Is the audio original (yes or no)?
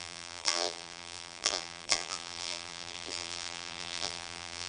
no